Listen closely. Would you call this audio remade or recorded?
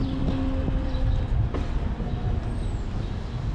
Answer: recorded